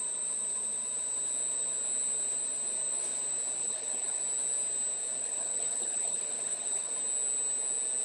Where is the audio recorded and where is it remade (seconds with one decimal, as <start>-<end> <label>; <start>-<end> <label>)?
0.0-3.6 recorded; 3.6-4.2 remade; 4.2-5.2 recorded; 5.2-6.9 remade; 6.9-8.0 recorded